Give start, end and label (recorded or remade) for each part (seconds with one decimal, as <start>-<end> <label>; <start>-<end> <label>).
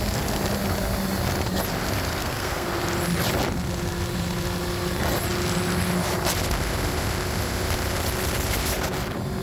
0.0-2.2 recorded; 2.2-2.7 remade; 2.7-9.4 recorded